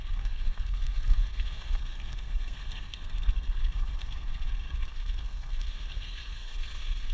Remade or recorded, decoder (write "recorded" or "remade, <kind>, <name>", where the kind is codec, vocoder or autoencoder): remade, codec, SNAC